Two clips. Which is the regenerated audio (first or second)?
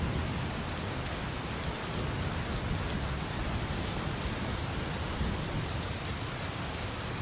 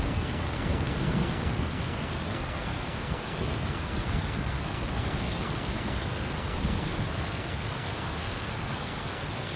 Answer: second